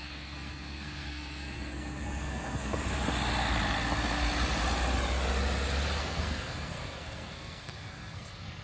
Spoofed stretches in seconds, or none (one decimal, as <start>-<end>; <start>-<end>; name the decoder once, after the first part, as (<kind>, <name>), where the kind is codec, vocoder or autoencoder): 0.0-2.8 (codec, SNAC); 6.0-8.6